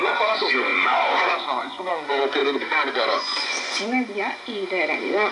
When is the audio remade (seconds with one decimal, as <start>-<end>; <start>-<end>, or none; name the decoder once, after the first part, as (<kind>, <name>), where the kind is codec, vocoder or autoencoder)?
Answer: 0.0-5.3 (vocoder, Vocos)